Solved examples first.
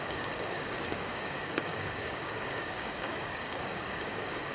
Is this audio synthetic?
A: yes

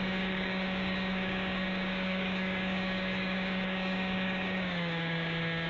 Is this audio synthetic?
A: yes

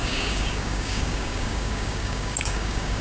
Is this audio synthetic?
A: yes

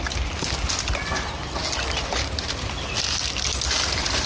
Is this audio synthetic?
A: no